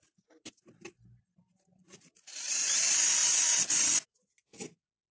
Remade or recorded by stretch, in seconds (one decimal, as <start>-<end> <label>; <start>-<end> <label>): 0.0-1.8 recorded; 1.8-2.8 remade; 2.8-5.1 recorded